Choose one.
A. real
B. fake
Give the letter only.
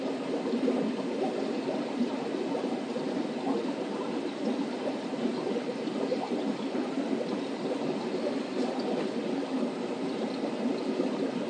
B